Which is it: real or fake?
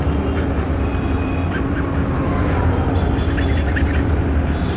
real